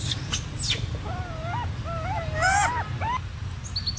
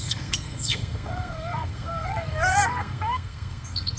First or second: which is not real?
second